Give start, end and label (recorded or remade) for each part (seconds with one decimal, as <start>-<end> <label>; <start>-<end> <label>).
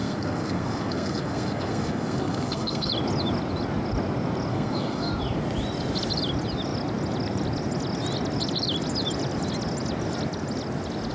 0.0-2.9 remade; 2.9-4.5 recorded; 4.5-5.1 remade; 5.1-11.1 recorded